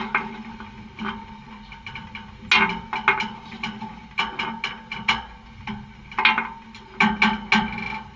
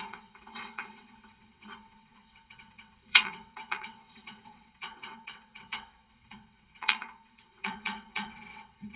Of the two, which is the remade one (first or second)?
second